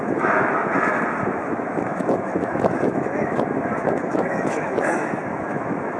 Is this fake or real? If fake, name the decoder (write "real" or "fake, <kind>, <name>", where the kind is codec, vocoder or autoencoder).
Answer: fake, autoencoder, DAC-VAE